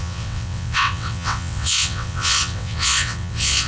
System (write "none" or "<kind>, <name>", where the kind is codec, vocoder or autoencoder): vocoder, WaveNeXt